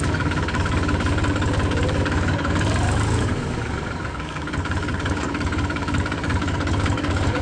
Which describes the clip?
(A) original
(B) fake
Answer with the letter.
B